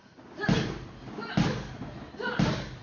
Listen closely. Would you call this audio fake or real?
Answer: real